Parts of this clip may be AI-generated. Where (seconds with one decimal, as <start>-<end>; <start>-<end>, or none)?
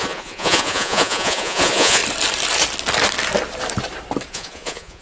0.0-2.0; 4.3-5.0